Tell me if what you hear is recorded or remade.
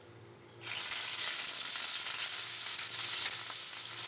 recorded